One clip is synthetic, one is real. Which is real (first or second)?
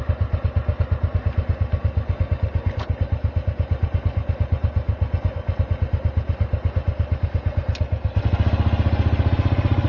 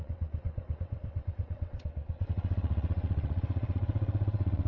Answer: first